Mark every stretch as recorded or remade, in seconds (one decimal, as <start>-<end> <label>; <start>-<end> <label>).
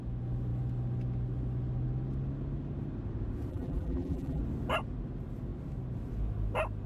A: 0.0-3.5 recorded; 3.5-4.4 remade; 4.4-6.9 recorded